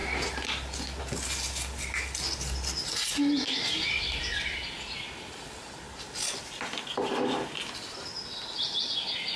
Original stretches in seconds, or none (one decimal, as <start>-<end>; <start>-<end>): 0.0-9.4

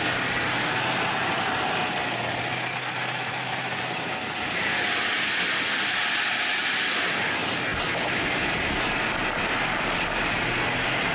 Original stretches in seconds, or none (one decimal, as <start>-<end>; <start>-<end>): 0.0-11.1

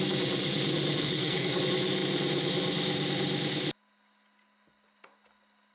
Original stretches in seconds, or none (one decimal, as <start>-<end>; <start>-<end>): 0.0-1.0; 1.6-5.7

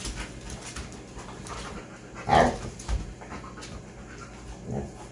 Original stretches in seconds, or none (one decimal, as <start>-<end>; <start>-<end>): 0.0-5.1